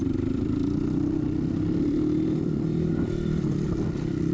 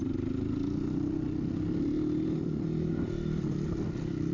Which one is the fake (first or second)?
first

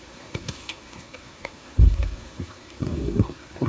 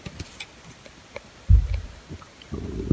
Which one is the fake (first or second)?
first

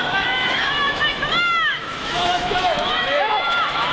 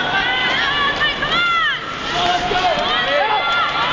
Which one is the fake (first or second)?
first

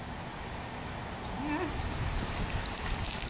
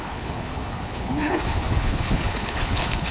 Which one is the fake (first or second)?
second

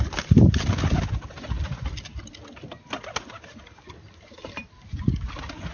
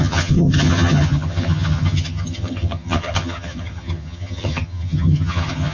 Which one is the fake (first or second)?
second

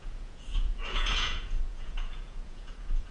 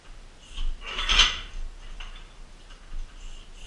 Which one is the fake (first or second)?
first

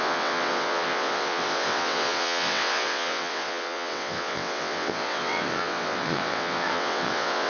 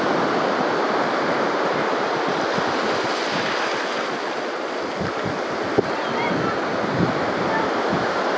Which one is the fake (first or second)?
first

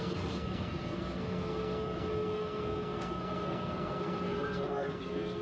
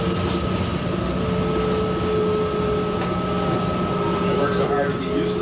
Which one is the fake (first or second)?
first